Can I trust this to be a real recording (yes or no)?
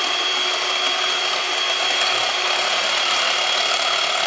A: yes